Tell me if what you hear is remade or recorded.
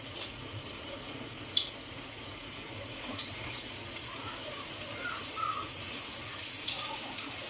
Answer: remade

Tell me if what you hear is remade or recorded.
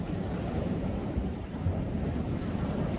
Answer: remade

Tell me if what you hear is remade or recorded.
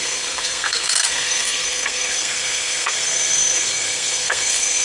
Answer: remade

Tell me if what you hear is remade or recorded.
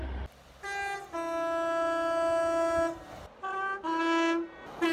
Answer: recorded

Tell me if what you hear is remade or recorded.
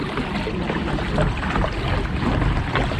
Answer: recorded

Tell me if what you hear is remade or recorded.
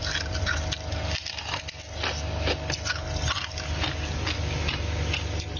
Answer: recorded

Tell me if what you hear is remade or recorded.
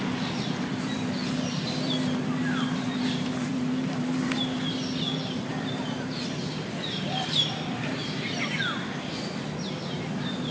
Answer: remade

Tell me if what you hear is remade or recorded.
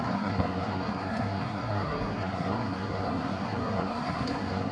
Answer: remade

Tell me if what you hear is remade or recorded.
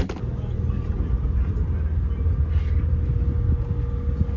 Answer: recorded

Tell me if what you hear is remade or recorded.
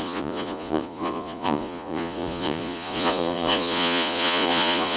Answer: remade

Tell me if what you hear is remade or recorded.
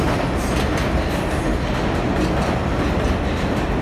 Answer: recorded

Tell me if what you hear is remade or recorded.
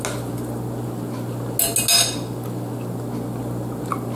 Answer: recorded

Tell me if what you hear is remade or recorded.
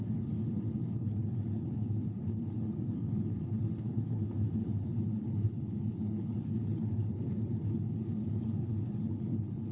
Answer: remade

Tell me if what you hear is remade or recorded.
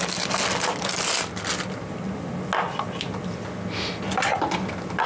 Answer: recorded